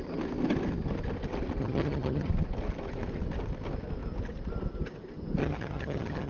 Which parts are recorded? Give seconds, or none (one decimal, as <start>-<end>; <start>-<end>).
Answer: 0.0-1.6; 2.3-5.4